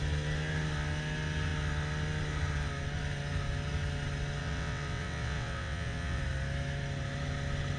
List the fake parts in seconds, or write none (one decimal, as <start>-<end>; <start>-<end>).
4.4-6.2